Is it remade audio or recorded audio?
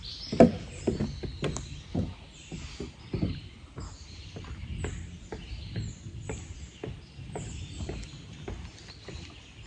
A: recorded